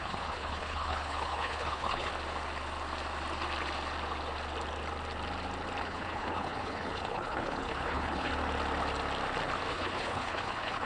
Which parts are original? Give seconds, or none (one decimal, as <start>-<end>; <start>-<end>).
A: 2.1-5.8; 8.3-9.7